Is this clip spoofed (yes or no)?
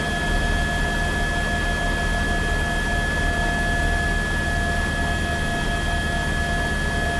no